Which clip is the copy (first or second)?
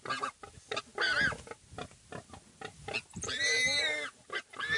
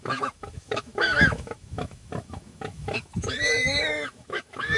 second